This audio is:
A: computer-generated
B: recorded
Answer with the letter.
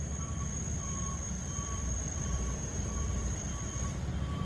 A